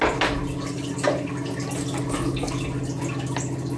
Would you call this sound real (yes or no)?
yes